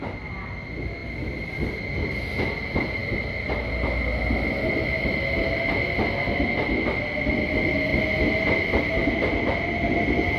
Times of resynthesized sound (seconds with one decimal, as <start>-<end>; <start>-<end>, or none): none